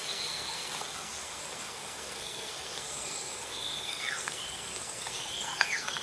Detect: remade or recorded remade